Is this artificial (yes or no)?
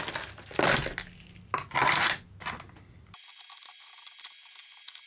no